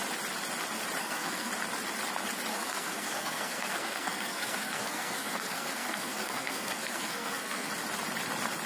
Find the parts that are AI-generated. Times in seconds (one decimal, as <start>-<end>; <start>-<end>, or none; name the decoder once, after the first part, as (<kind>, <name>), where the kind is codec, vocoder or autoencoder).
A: 1.0-1.5 (codec, SNAC); 2.5-7.7

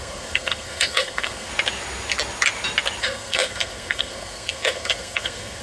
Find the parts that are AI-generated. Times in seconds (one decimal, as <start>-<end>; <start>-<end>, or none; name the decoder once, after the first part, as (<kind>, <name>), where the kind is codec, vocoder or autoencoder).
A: 0.0-1.5 (codec, SNAC); 3.0-5.6

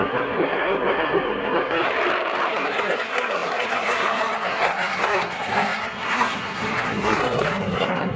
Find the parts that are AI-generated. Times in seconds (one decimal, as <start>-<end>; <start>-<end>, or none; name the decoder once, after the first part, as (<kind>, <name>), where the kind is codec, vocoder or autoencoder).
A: 0.0-1.9 (codec, SNAC); 2.5-8.2

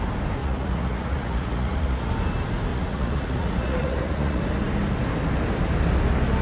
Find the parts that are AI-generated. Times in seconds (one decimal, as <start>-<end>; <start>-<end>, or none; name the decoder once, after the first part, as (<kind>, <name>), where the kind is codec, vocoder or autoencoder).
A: 0.4-2.1 (vocoder, Vocos); 2.7-4.4

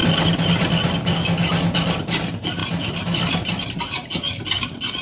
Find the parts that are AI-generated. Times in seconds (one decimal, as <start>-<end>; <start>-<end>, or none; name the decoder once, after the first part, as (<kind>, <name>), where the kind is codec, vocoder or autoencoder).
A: none

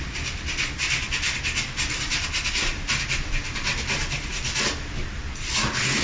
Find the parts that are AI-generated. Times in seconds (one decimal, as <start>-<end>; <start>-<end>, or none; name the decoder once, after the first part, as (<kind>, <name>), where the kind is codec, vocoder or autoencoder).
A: none

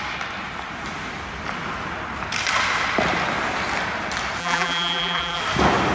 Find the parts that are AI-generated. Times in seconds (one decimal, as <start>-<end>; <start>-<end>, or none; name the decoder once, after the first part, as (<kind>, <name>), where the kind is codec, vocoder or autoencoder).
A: 4.4-5.4 (vocoder, BigVGAN v2)